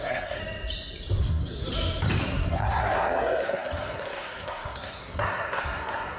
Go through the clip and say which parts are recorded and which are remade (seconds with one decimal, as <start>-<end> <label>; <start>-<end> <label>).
0.0-0.4 remade; 0.4-1.2 recorded; 1.2-1.6 remade; 1.6-2.2 recorded; 2.2-6.2 remade